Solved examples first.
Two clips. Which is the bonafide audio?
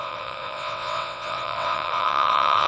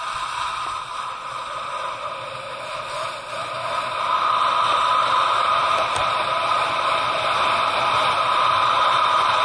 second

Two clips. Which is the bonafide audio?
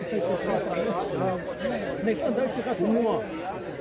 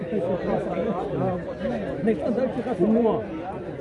first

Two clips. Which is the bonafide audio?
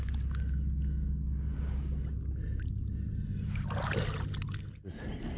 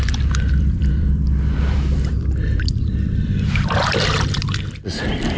first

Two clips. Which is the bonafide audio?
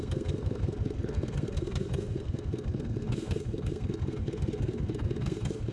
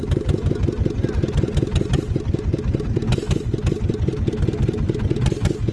second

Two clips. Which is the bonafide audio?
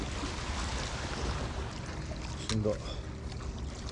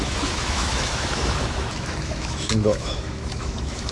first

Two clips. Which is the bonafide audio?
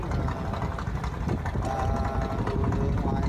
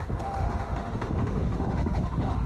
first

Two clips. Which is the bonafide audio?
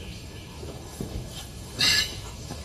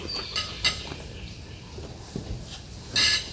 second